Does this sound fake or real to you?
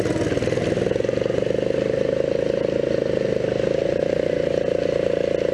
real